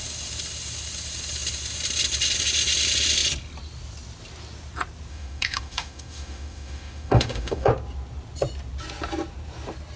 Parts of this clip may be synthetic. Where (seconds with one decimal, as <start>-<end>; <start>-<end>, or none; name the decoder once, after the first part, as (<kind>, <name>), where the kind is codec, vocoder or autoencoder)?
5.1-7.7 (autoencoder, DAC-VAE)